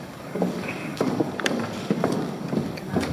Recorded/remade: remade